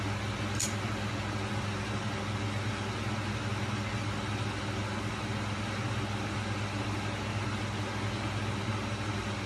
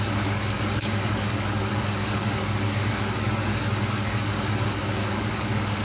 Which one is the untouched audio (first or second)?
first